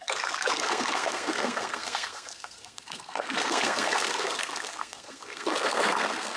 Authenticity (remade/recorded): remade